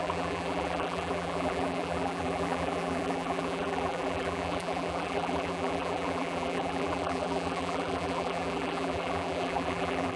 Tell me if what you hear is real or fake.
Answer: fake